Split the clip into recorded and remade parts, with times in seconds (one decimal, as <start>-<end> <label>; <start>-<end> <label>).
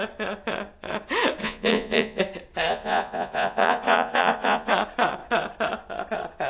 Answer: 0.0-1.4 recorded; 1.4-2.2 remade; 2.2-2.7 recorded; 2.7-4.7 remade; 4.7-6.5 recorded